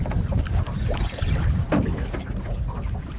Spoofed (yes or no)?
no